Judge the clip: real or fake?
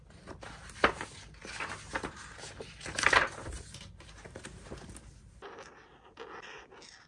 real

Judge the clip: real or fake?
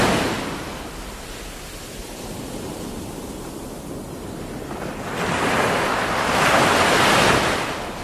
real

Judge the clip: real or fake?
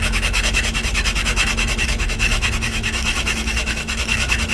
fake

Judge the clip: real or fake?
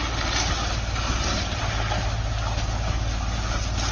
real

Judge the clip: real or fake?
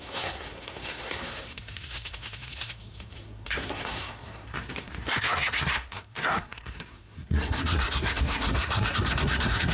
fake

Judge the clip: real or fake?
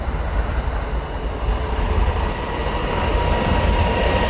real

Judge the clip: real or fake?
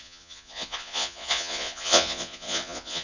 fake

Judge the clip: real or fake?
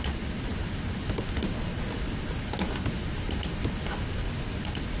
real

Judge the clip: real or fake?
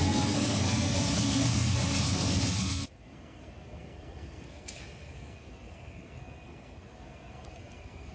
fake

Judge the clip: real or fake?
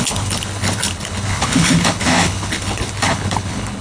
fake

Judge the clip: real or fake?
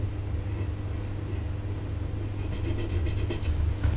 real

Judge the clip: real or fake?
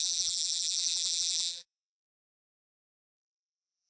fake